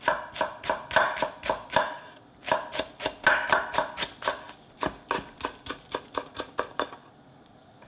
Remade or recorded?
recorded